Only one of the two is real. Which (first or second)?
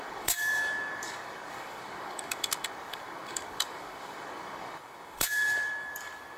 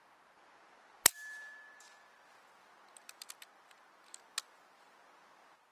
second